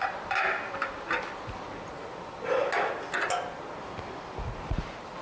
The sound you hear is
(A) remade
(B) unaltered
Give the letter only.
B